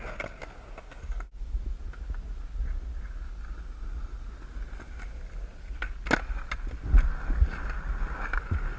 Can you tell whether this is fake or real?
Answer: real